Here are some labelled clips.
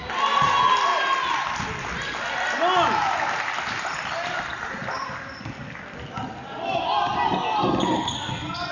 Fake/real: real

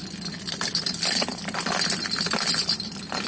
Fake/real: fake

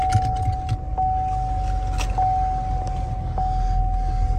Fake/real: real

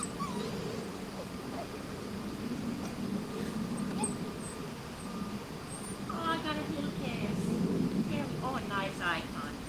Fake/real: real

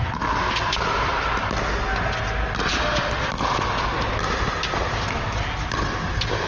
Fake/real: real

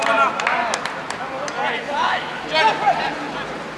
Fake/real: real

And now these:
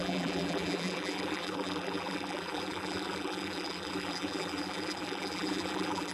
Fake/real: fake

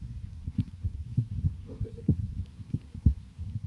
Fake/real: fake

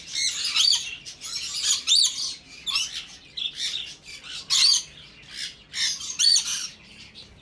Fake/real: real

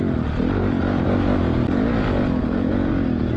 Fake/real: real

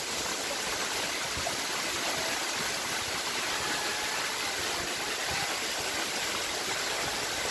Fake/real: real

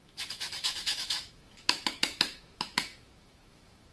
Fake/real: fake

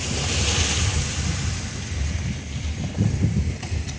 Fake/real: real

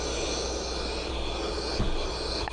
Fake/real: real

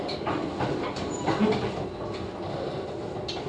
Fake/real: real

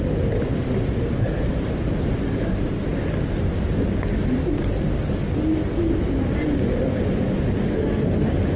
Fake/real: real